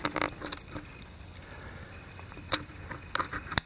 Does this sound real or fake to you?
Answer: real